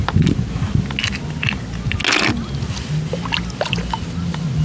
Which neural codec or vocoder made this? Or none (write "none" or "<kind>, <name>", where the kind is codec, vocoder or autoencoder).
none